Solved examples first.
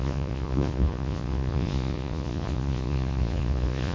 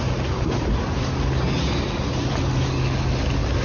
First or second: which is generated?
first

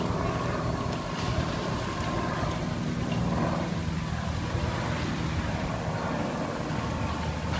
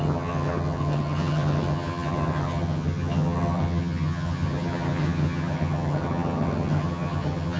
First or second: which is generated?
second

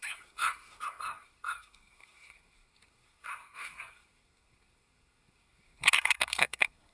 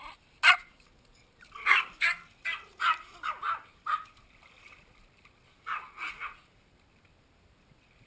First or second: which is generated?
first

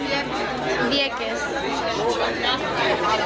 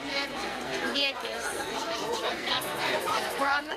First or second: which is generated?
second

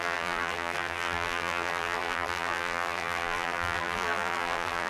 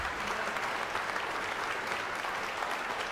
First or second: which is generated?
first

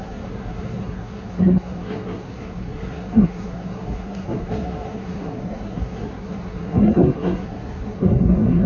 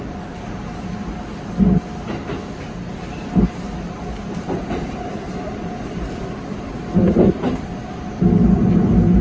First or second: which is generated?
first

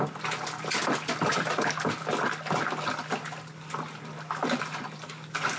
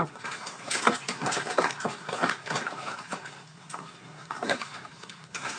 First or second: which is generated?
second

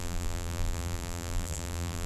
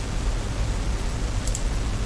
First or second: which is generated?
first